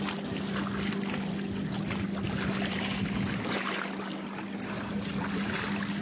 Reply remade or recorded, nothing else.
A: recorded